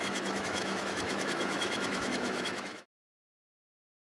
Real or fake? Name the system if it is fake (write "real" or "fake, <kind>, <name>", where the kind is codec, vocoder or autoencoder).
fake, autoencoder, DAC-VAE